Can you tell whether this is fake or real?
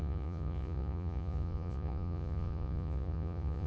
fake